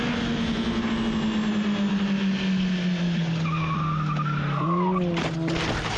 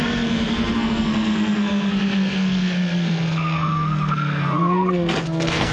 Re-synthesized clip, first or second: second